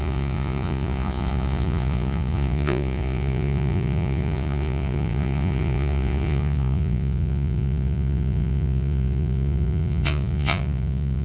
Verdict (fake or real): fake